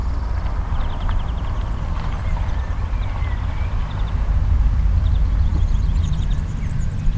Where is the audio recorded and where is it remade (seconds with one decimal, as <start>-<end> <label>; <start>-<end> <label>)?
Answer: 0.0-5.5 recorded; 5.5-6.6 remade; 6.6-7.2 recorded